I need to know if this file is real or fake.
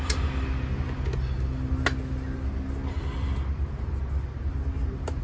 real